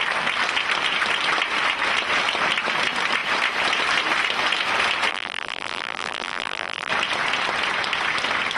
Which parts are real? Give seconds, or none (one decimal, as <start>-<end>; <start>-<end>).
0.0-5.1; 6.9-8.6